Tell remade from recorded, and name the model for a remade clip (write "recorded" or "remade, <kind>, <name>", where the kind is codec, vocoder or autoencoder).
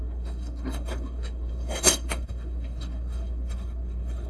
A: remade, codec, SNAC